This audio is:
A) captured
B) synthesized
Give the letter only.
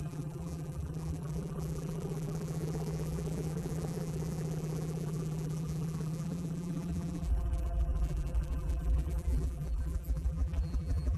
B